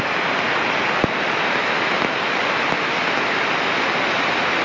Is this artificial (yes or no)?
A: no